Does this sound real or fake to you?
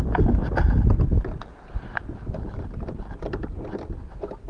real